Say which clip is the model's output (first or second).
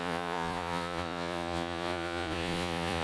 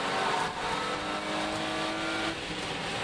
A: first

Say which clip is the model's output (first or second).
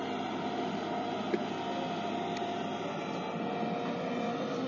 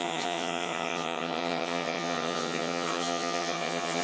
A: second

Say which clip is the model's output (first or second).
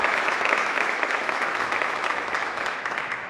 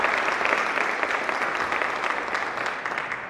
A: first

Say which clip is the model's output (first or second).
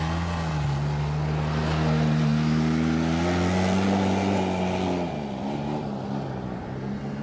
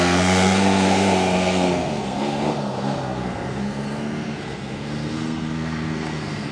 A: second